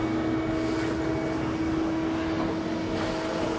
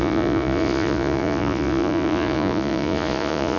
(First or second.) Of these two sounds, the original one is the first